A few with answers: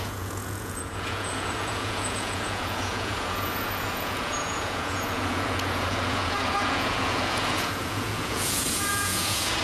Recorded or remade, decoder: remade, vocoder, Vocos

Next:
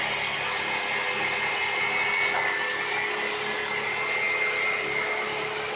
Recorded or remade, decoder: recorded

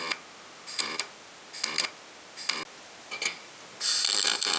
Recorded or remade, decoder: recorded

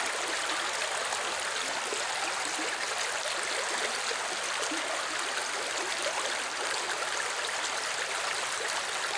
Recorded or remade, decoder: recorded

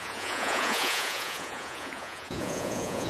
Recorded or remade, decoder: remade, vocoder, Vocos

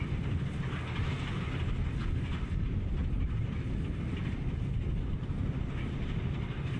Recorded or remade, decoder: recorded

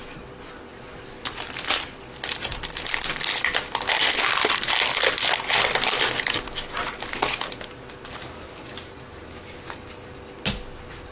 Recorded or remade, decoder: recorded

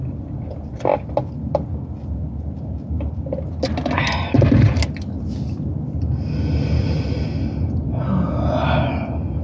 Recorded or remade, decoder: recorded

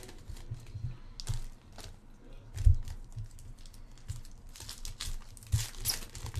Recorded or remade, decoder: recorded